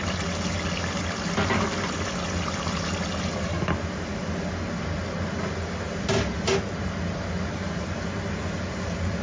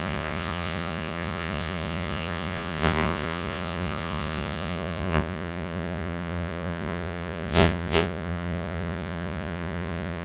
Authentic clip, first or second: first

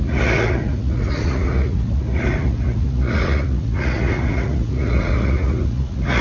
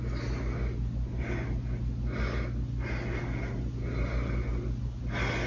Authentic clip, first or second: second